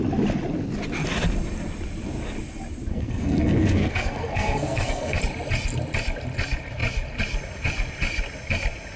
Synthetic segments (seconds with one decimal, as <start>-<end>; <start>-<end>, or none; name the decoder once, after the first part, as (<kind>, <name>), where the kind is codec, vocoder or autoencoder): 2.9-5.2 (codec, SNAC)